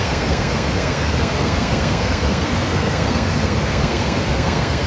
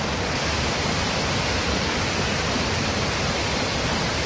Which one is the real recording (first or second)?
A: second